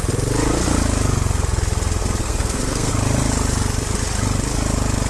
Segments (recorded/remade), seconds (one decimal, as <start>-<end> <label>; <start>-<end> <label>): 0.0-2.2 recorded; 2.2-2.9 remade; 2.9-5.1 recorded